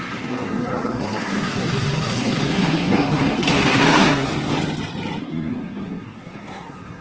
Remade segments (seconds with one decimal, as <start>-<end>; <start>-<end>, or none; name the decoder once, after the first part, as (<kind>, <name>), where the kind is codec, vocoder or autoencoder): 0.0-4.3 (codec, SNAC); 5.2-7.0